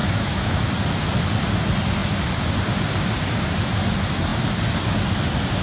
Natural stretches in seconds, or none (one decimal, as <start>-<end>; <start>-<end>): 0.6-5.6